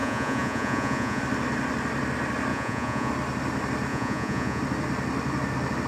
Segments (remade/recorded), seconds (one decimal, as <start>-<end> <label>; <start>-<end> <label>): 0.0-1.2 remade; 1.2-2.5 recorded; 2.5-3.1 remade; 3.1-3.9 recorded; 3.9-4.6 remade; 4.6-5.9 recorded